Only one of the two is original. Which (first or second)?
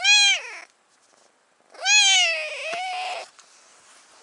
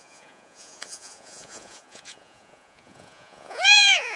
first